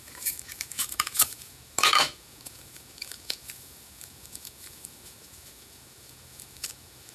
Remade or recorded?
remade